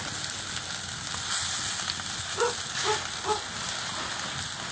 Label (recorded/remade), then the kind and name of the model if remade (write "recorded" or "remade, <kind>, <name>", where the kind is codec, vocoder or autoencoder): recorded